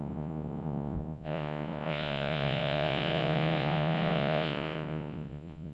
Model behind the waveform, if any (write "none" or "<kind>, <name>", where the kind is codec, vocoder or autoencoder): vocoder, Vocos